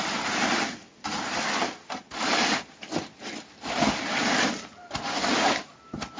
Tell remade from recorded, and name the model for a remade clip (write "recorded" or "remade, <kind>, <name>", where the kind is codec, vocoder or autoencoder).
recorded